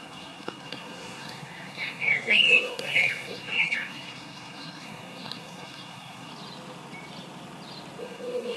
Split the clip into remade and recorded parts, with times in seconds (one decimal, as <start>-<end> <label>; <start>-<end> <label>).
0.0-6.3 remade; 6.3-8.0 recorded; 8.0-8.6 remade